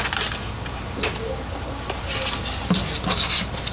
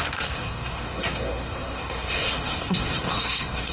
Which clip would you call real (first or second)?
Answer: first